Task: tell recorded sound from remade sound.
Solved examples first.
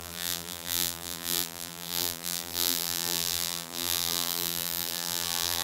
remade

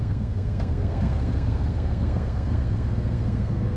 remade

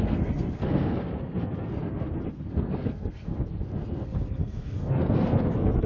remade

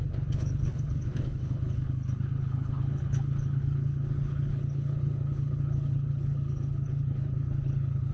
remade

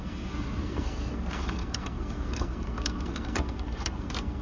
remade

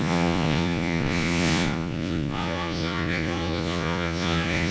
remade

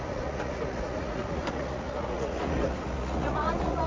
remade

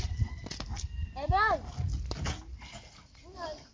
remade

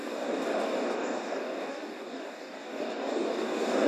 remade